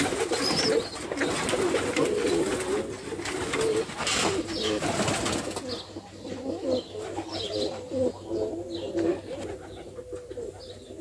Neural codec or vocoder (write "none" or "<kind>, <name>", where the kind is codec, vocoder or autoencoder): none